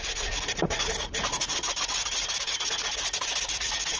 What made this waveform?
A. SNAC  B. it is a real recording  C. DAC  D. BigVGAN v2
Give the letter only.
B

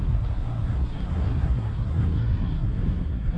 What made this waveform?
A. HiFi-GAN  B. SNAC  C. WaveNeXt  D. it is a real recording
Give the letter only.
B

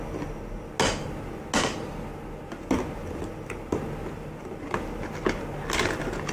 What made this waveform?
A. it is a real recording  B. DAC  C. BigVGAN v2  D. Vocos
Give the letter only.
A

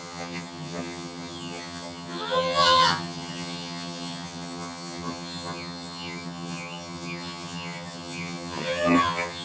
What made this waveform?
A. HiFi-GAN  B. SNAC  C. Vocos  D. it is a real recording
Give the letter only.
A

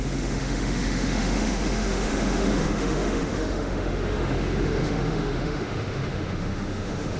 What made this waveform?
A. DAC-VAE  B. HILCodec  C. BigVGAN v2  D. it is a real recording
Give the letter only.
A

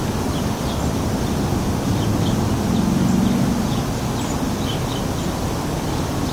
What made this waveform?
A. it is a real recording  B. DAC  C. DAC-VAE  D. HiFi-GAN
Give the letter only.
A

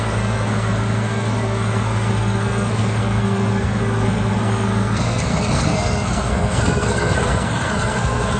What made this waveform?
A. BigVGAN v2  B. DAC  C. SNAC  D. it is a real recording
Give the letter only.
C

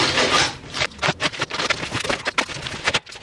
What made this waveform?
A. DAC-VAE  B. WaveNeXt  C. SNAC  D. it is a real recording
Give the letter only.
D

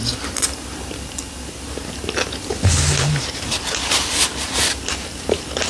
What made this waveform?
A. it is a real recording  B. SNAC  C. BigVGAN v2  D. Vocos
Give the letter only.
A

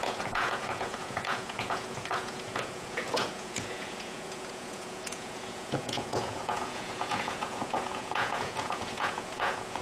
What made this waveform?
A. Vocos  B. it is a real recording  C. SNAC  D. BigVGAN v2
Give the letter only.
A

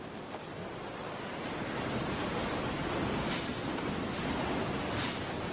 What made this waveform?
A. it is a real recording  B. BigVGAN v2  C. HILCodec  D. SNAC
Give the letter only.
A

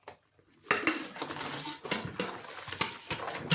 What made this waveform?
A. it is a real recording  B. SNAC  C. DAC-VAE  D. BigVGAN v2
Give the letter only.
A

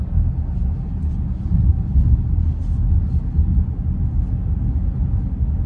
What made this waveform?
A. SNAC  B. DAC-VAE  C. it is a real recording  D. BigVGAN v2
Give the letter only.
C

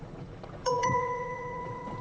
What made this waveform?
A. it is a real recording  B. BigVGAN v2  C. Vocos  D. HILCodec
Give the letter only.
C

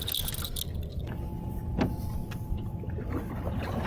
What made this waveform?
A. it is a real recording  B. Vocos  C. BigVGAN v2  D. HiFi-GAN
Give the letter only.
A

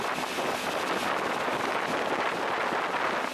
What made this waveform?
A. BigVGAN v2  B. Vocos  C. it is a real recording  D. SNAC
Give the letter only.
C